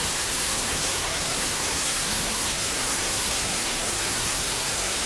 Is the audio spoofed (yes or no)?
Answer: yes